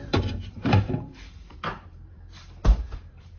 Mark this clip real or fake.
fake